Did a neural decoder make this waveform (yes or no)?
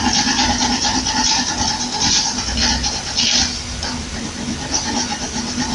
no